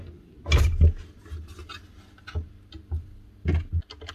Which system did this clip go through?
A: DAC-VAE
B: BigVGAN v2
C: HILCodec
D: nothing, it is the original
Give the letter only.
D